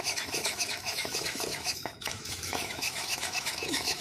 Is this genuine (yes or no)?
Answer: no